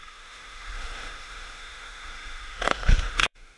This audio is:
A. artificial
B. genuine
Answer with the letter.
A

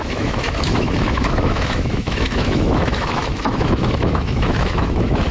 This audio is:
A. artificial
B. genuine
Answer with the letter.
A